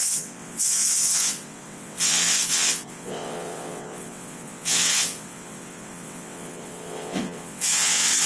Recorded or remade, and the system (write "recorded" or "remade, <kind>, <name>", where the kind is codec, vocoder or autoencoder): remade, vocoder, WaveNeXt